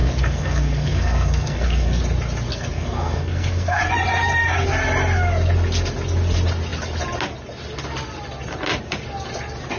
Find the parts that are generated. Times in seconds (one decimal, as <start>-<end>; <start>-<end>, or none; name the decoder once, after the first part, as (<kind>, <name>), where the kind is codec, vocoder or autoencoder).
0.0-2.0 (codec, SNAC); 2.5-3.8